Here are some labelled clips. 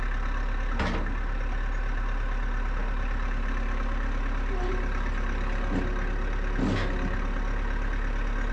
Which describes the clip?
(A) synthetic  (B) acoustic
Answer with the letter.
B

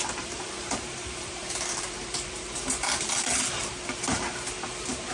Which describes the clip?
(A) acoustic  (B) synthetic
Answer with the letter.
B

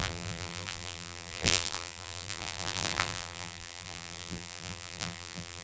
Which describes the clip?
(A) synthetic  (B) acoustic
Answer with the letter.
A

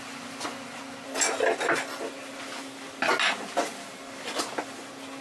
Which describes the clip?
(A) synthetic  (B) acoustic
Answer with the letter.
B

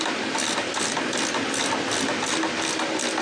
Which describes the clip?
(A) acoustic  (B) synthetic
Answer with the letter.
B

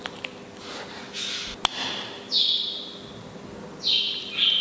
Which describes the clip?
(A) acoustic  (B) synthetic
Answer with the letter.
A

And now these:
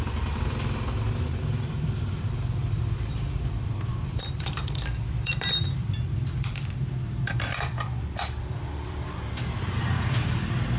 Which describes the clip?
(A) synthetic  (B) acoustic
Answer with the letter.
A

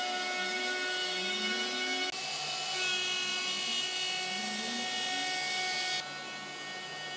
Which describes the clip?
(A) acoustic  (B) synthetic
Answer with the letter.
A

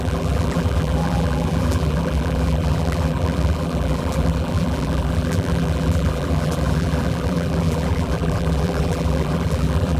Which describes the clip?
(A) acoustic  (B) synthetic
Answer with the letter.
B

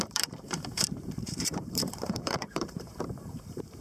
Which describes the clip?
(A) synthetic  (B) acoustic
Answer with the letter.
A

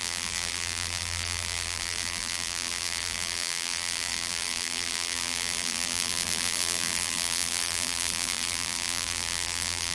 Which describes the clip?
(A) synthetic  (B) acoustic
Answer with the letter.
A